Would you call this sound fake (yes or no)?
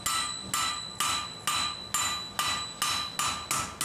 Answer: no